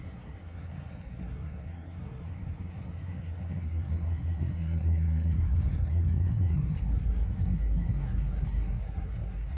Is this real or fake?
fake